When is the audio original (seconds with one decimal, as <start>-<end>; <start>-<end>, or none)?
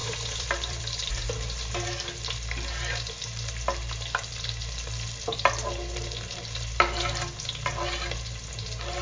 1.1-9.0